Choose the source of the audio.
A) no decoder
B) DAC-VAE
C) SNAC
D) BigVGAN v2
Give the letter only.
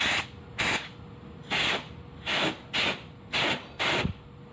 A